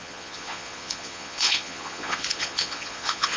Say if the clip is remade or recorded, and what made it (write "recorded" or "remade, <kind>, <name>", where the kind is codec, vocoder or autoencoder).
remade, vocoder, Vocos